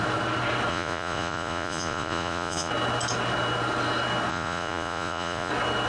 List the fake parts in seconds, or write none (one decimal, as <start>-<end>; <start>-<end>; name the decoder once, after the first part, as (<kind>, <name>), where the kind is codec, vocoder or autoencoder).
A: 0.7-2.7 (vocoder, Vocos); 4.3-5.5